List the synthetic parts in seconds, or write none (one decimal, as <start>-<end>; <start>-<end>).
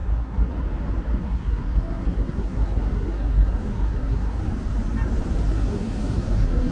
0.0-0.5; 1.2-4.4; 5.5-6.7